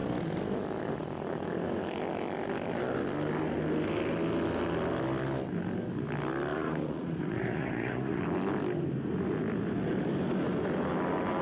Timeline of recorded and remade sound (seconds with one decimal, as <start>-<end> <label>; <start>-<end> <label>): 0.0-6.5 recorded; 6.5-8.2 remade; 8.2-11.4 recorded